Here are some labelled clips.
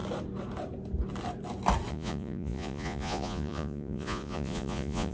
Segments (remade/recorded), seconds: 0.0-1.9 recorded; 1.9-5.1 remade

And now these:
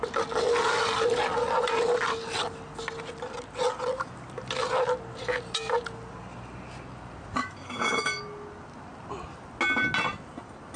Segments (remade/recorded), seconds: 0.0-7.4 recorded; 7.4-8.2 remade; 8.2-10.8 recorded